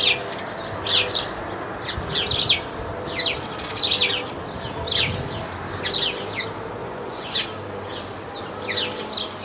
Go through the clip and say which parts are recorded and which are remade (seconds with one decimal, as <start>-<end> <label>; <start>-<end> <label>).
0.0-6.8 recorded; 6.8-7.4 remade; 7.4-9.4 recorded